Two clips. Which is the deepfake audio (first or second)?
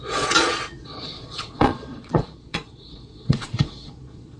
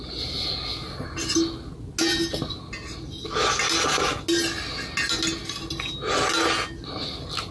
first